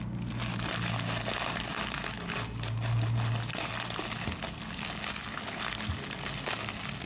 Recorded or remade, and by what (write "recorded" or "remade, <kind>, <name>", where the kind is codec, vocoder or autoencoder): recorded